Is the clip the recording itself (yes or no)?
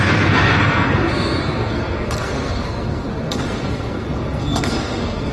no